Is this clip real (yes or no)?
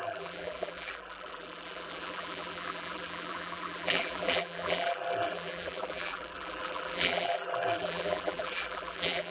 no